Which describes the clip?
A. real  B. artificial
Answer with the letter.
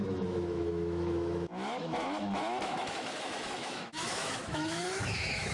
B